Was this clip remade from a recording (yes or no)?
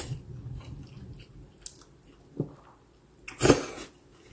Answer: no